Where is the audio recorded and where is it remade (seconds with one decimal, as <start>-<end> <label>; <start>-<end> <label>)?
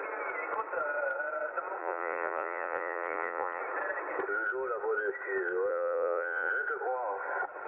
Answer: 0.0-1.8 recorded; 1.8-3.6 remade; 3.6-5.7 recorded; 5.7-6.5 remade; 6.5-7.7 recorded